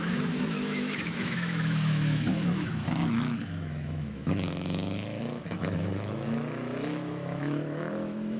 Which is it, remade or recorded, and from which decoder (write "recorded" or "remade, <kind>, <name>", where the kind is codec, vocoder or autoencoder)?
remade, autoencoder, DAC-VAE